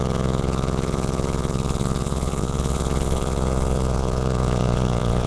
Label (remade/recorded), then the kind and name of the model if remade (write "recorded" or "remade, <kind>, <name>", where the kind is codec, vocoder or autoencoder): remade, vocoder, Vocos